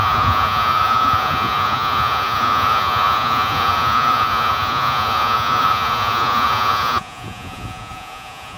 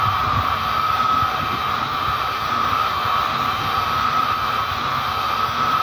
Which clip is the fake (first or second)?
first